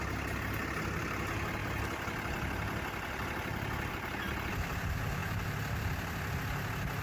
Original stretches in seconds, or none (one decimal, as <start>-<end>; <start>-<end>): 0.0-7.0